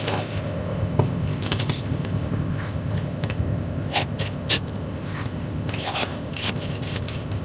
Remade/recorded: remade